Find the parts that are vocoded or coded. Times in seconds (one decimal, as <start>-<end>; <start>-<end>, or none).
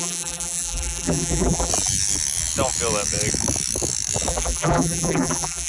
0.0-1.7; 4.3-5.7